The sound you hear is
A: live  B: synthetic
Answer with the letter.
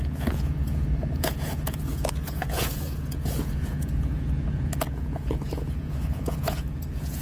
B